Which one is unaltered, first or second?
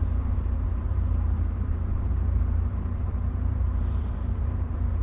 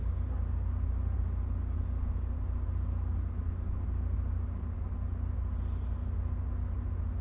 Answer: second